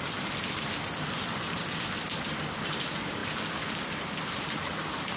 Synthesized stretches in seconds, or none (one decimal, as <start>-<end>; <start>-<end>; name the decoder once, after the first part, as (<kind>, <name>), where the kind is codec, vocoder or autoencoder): none